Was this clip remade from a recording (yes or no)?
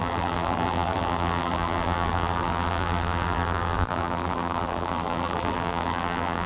yes